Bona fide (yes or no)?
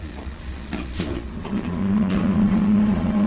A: no